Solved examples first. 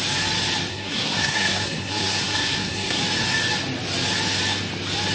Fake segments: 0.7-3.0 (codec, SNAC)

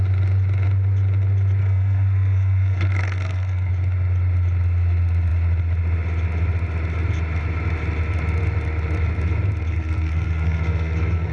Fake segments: 1.6-3.7 (codec, SNAC); 9.7-11.3

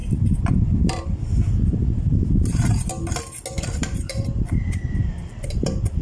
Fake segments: 0.0-2.7 (vocoder, BigVGAN v2); 3.8-4.3

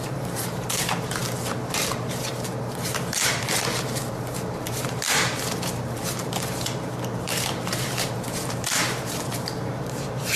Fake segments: 0.0-10.4 (vocoder, BigVGAN v2)

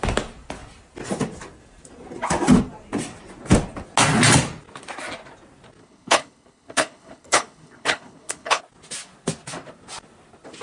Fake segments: 5.8-8.6 (codec, HILCodec)

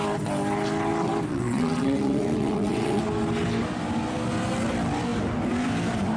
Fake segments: 1.3-3.0 (vocoder, WaveNeXt)

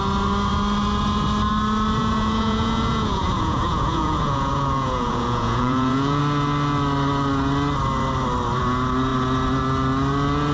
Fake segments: 2.0-6.2 (vocoder, Vocos)

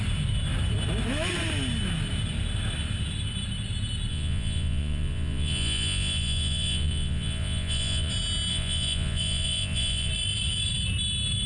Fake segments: 4.1-8.1 (vocoder, Vocos); 8.5-10.1